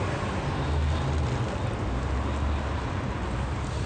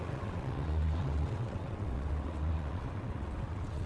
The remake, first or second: second